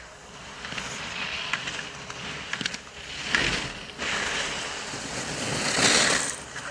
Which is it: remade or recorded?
recorded